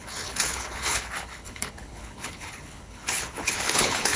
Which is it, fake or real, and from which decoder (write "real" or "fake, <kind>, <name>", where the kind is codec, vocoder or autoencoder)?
fake, codec, HILCodec